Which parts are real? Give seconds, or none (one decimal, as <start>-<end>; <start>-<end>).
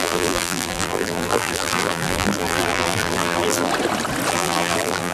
3.7-4.3